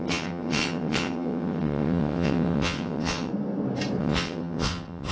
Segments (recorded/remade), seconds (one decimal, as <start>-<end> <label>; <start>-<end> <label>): 0.0-3.3 remade; 3.3-4.0 recorded; 4.0-5.1 remade

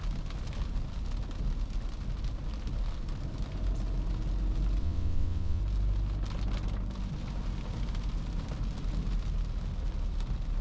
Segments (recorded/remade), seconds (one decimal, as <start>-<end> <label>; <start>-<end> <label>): 0.0-4.8 recorded; 4.8-5.6 remade; 5.6-10.6 recorded

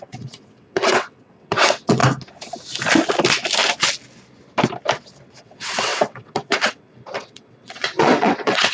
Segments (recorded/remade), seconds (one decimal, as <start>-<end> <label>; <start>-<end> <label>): 0.0-2.0 remade; 2.0-5.4 recorded; 5.4-8.7 remade

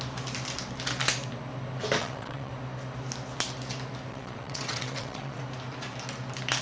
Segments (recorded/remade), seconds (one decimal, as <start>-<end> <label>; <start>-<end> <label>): 0.0-2.0 recorded; 2.0-2.5 remade; 2.5-4.1 recorded; 4.1-5.4 remade; 5.4-6.6 recorded

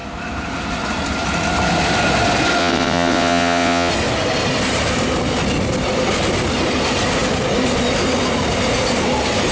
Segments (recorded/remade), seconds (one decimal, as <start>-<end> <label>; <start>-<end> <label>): 0.0-2.6 recorded; 2.6-3.9 remade; 3.9-9.5 recorded